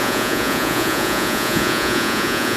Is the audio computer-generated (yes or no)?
yes